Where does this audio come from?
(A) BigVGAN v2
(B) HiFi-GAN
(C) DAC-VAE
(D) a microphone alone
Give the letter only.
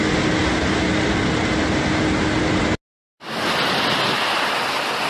D